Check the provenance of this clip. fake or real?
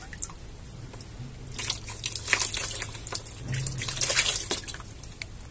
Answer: real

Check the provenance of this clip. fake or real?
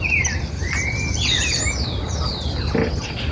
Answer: real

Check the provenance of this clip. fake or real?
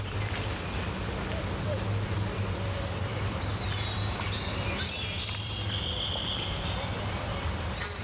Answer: fake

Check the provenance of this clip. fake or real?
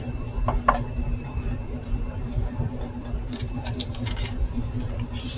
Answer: fake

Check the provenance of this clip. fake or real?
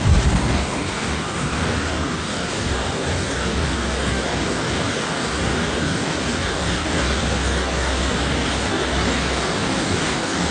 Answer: fake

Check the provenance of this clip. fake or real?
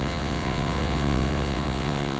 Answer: fake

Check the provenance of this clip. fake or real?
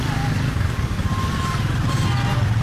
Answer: real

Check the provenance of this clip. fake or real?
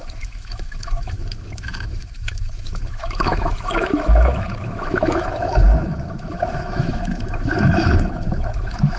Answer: fake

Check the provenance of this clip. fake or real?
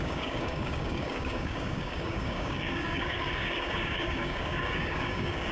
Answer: fake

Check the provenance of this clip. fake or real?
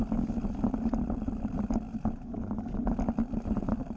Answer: real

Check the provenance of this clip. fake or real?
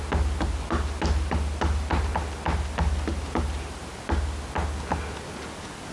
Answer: real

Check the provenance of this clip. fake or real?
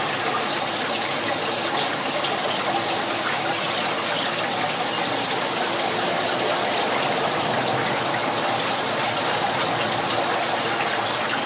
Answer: real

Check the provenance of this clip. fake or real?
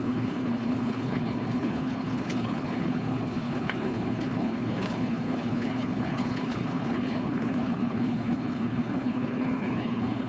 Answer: fake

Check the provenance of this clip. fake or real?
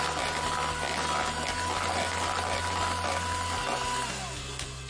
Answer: real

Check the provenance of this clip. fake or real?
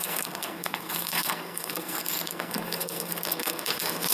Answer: fake